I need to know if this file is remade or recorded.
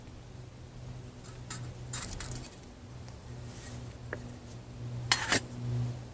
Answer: recorded